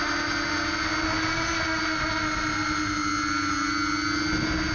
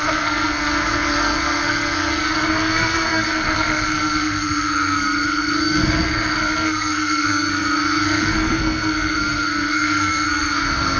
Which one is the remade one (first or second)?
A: second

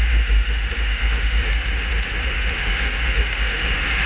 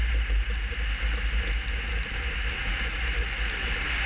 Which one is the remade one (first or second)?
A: first